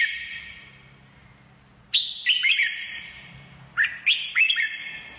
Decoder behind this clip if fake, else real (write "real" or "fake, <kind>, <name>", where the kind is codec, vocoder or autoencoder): real